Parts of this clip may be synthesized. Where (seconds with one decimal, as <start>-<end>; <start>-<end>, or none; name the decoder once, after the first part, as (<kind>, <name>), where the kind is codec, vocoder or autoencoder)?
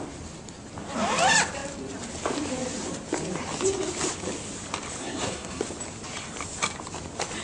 5.0-5.6 (codec, SNAC)